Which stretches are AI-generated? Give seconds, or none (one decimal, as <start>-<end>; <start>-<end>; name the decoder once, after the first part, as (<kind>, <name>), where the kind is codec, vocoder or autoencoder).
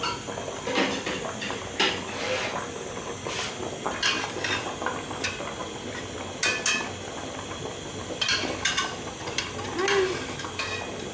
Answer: 5.6-9.4 (vocoder, BigVGAN v2)